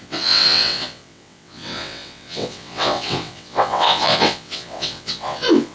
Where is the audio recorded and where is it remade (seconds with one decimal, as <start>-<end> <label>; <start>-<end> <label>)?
0.0-5.7 remade